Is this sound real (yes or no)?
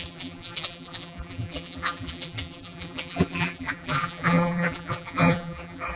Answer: no